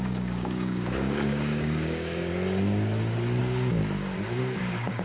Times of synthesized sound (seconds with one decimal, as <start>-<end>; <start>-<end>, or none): 0.0-2.3; 3.4-3.8; 4.6-5.0